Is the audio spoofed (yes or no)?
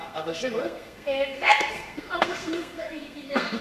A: yes